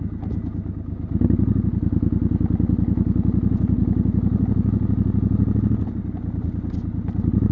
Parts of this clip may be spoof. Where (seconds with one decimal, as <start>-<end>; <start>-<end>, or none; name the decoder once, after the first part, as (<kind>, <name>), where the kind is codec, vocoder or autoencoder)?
none

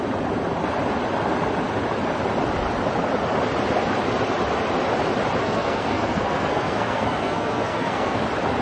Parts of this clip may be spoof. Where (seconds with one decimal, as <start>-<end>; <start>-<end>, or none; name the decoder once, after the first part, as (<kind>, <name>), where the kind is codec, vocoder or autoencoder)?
5.4-8.2 (codec, SNAC)

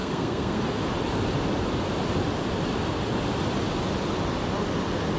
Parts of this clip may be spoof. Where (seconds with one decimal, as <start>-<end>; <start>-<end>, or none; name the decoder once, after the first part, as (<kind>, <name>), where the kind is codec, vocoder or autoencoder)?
0.0-0.6 (codec, SNAC)

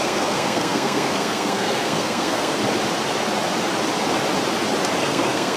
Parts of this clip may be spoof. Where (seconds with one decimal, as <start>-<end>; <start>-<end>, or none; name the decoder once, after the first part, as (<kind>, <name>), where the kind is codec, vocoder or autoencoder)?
0.0-2.6 (codec, SNAC); 5.0-5.6

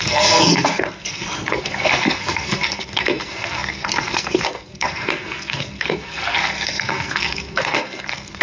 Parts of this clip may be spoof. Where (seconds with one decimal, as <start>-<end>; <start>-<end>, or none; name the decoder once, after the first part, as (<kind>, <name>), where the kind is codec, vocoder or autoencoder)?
0.0-8.4 (codec, SNAC)

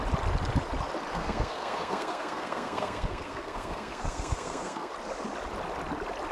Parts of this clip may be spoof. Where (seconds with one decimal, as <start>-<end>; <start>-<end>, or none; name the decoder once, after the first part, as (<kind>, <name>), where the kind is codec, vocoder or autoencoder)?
1.1-4.9 (codec, SNAC)

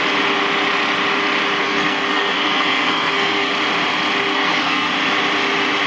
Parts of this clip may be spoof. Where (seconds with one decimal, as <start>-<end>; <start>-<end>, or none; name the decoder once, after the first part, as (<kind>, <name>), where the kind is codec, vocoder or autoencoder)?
1.6-3.5 (codec, SNAC); 4.3-4.9